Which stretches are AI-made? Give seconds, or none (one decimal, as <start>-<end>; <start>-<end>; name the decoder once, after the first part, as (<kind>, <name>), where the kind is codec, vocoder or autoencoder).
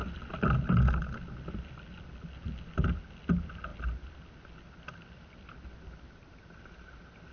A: none